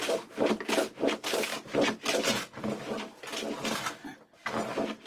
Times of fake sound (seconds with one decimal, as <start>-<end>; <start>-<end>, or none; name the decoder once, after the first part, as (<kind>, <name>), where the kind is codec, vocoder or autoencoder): none